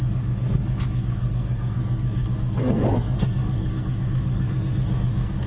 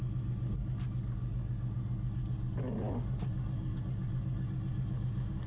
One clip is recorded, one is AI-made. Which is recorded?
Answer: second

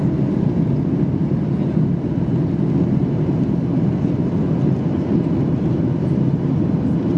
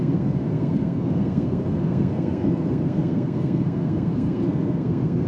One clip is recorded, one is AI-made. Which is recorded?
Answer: first